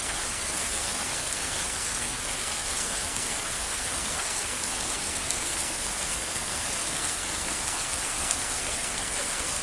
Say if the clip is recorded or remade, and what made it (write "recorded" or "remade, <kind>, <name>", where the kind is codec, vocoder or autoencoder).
remade, codec, SNAC